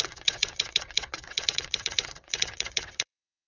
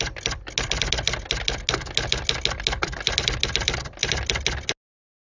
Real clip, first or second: second